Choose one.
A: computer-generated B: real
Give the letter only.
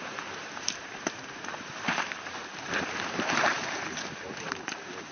A